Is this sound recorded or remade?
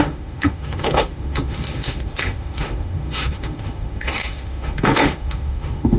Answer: remade